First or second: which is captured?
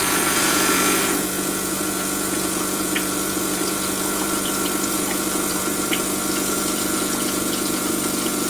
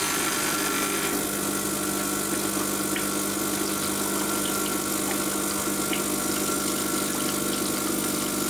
second